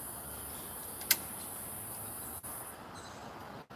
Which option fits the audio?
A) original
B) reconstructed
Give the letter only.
A